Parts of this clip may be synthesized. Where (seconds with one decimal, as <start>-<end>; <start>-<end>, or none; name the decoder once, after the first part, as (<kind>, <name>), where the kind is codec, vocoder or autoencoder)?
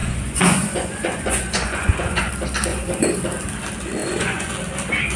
0.0-2.3 (vocoder, Vocos); 2.7-3.2; 4.0-4.5